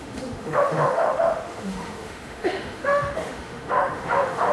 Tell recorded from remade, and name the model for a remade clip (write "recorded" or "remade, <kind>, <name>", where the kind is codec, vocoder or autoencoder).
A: remade, autoencoder, DAC-VAE